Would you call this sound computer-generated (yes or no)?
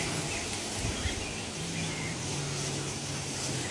no